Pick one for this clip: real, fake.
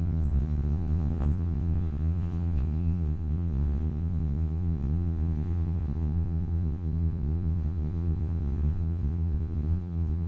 fake